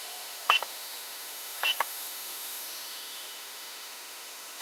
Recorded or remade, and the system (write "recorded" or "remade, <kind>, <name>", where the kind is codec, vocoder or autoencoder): remade, autoencoder, DAC-VAE